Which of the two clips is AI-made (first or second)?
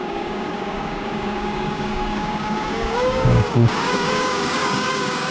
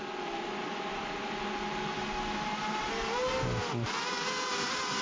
first